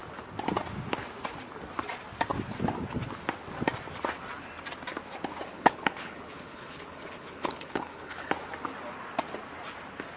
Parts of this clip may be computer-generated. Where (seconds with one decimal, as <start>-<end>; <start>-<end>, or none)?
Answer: 5.5-8.3